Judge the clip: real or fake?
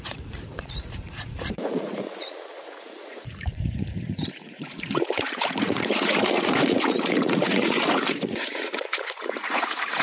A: fake